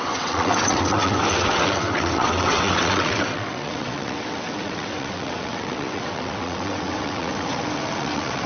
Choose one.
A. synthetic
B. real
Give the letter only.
A